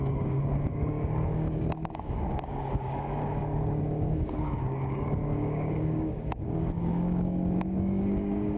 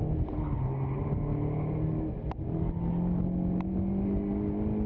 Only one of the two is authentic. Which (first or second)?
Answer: second